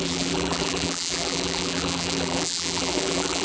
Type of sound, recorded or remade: remade